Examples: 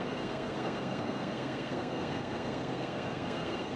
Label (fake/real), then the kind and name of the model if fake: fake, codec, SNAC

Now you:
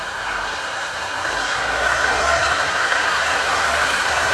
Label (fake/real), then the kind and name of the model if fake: fake, codec, SNAC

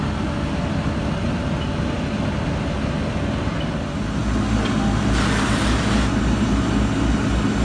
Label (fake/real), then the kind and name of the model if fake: real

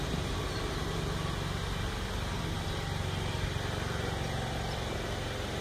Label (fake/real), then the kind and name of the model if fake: real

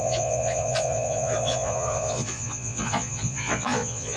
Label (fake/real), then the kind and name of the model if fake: fake, vocoder, Vocos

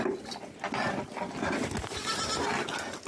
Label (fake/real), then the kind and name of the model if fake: real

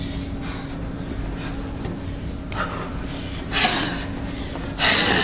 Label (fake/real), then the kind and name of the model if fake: real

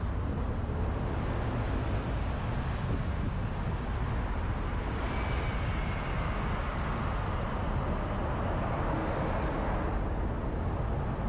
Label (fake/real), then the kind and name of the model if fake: real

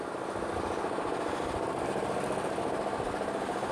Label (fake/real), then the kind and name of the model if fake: real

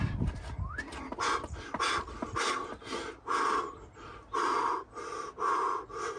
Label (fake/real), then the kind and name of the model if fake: real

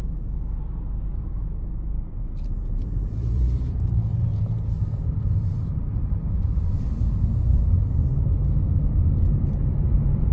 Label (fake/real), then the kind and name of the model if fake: fake, vocoder, BigVGAN v2